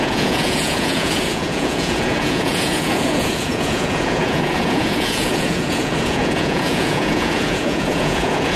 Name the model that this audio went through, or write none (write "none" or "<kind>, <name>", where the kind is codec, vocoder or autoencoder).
vocoder, Vocos